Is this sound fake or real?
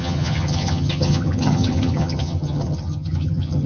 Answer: fake